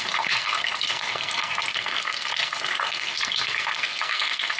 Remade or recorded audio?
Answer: remade